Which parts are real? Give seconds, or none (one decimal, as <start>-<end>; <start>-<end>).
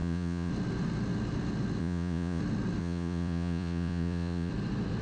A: 0.5-1.8; 2.4-2.8; 4.5-5.0